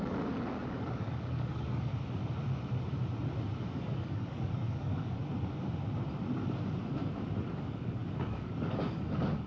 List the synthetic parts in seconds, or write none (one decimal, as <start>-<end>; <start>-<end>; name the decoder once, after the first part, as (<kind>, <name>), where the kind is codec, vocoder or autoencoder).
0.0-1.9 (codec, DAC); 3.6-5.2; 7.4-9.5